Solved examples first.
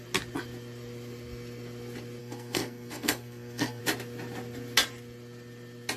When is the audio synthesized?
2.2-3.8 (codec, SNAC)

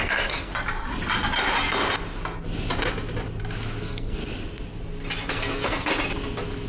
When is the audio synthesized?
0.0-0.5 (codec, SNAC); 3.8-4.2; 5.3-5.9

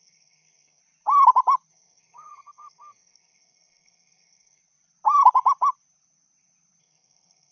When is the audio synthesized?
0.0-0.8 (codec, SNAC); 1.7-4.6; 6.8-7.5

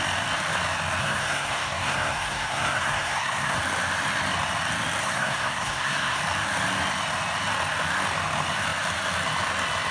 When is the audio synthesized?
1.0-3.6 (codec, SNAC); 5.0-6.2

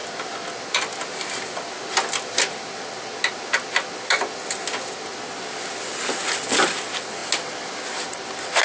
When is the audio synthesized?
none

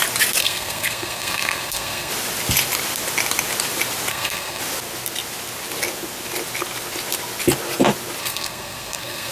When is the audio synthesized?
0.4-2.1 (codec, SNAC); 4.1-4.6; 8.2-9.3

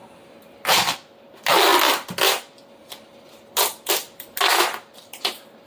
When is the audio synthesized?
none

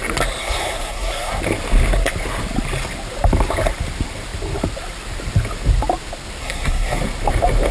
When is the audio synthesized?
0.4-1.4 (codec, SNAC); 6.4-7.0